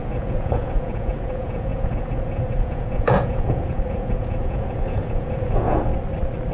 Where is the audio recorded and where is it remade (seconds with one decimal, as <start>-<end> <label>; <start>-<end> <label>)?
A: 0.0-5.9 remade; 5.9-6.5 recorded